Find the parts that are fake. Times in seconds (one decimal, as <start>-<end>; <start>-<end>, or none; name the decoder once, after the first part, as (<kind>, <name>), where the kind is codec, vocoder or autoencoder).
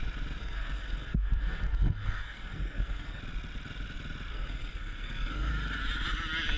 0.4-3.2 (codec, SNAC); 4.3-5.5